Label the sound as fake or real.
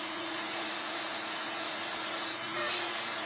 fake